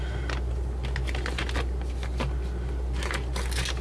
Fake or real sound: real